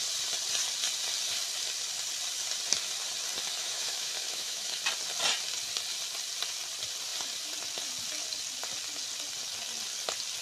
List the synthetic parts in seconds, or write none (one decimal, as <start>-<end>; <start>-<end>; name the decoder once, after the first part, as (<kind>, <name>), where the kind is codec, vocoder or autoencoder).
3.6-4.8 (autoencoder, DAC-VAE)